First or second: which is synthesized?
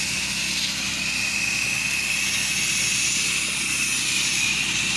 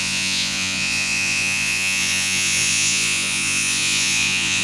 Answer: second